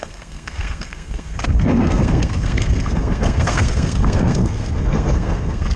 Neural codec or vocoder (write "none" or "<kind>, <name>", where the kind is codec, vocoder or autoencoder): codec, SNAC